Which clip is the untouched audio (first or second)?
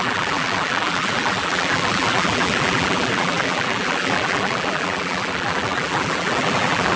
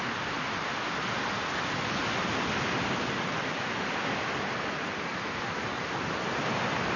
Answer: second